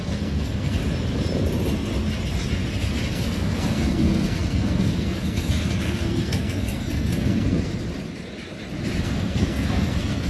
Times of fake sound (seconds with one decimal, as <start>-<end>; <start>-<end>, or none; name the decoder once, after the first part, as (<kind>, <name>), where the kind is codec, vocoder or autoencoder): 0.0-0.8 (codec, SNAC); 3.1-7.7; 9.0-10.3